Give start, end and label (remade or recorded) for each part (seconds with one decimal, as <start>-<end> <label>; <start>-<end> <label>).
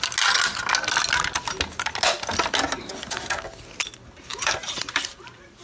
0.0-4.3 recorded; 4.3-5.6 remade